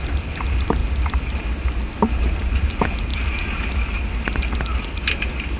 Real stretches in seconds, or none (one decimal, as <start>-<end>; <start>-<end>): 0.0-5.6